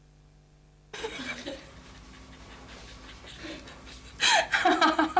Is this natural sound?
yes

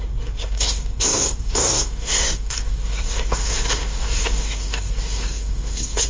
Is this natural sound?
no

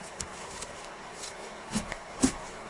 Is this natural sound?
no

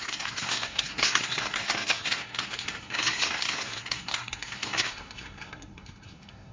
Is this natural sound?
no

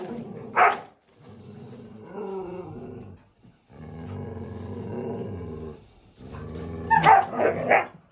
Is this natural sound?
yes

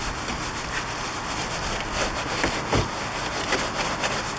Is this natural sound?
yes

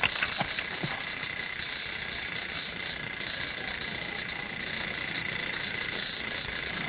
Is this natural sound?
yes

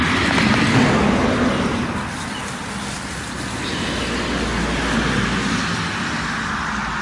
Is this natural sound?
yes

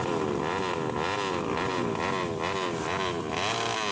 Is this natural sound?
yes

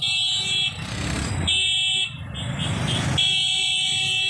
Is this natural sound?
yes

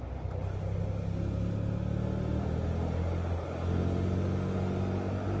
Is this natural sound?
yes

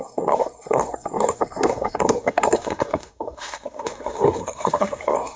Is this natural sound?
no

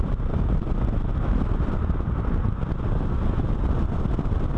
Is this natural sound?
yes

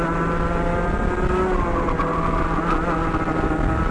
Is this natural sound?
yes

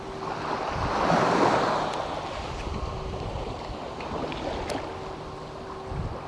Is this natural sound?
yes